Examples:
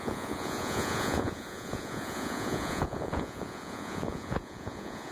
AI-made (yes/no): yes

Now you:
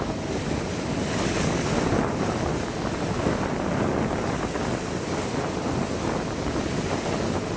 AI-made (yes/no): no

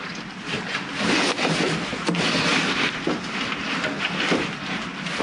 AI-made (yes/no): no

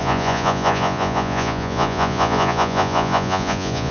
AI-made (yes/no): yes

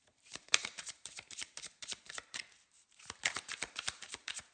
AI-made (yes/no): yes